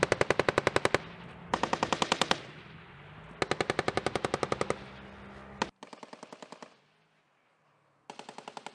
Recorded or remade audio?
recorded